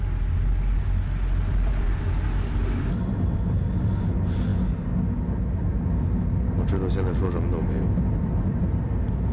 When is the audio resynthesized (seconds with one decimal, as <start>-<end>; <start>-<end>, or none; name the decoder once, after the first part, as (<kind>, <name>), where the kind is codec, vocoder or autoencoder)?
none

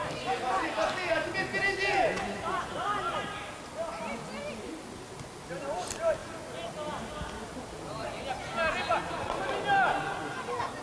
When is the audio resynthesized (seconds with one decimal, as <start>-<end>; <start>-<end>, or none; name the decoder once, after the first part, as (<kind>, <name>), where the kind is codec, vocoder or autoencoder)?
none